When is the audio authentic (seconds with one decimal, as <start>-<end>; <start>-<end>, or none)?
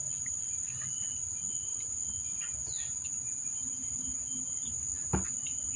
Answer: 0.0-5.8